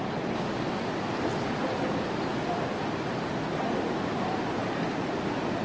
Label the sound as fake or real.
real